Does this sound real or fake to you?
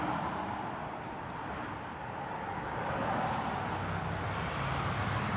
real